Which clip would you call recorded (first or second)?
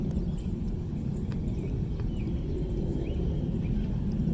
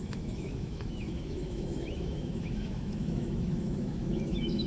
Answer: first